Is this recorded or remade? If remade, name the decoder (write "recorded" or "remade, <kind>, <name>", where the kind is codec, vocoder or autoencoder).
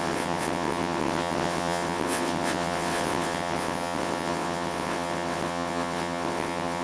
remade, vocoder, WaveNeXt